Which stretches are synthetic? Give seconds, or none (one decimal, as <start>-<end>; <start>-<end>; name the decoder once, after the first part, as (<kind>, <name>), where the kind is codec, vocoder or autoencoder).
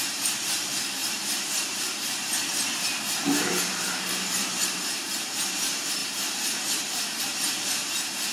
0.0-8.3 (vocoder, BigVGAN v2)